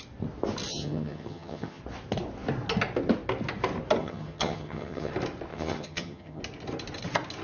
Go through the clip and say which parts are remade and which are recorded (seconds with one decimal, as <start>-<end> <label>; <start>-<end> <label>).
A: 0.0-0.7 recorded; 0.7-1.8 remade; 1.8-4.0 recorded; 4.0-5.1 remade; 5.1-5.5 recorded; 5.5-6.4 remade; 6.4-7.4 recorded